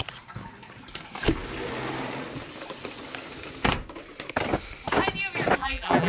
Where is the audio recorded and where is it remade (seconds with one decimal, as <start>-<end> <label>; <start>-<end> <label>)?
0.0-5.6 recorded; 5.6-6.1 remade